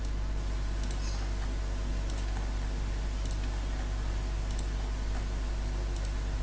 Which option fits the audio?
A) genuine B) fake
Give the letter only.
A